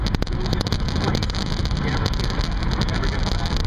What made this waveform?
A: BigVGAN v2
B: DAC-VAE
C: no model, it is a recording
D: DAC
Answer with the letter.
C